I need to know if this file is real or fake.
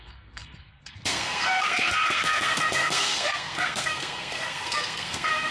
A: fake